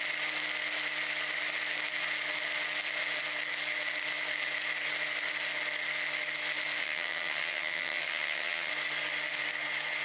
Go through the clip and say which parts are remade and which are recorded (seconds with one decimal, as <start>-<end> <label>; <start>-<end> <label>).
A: 0.0-6.8 recorded; 6.8-8.7 remade; 8.7-10.0 recorded